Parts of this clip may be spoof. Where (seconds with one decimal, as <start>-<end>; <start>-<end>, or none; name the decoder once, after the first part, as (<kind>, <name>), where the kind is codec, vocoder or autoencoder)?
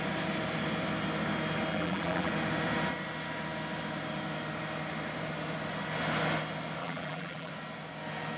1.7-2.3 (vocoder, BigVGAN v2); 6.8-7.5